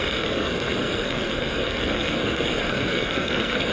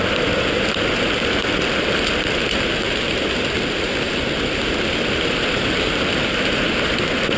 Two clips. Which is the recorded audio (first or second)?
second